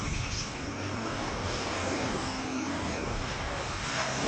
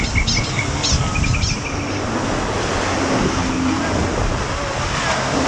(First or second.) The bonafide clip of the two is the second